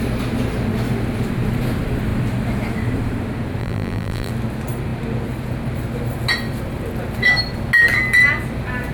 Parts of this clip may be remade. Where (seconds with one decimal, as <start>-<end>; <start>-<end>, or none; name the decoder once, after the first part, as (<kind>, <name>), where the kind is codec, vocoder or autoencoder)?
3.6-4.3 (vocoder, BigVGAN v2)